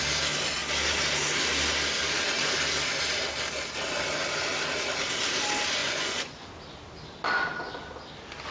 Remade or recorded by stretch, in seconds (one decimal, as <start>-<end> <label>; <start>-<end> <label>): 0.0-5.8 recorded; 5.8-6.5 remade; 6.5-8.5 recorded